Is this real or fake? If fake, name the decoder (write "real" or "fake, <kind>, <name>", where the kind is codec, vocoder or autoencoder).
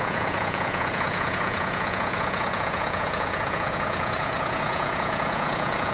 fake, vocoder, Vocos